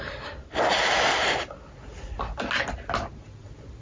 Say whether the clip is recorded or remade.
recorded